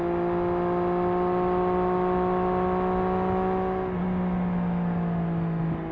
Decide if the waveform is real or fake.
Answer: real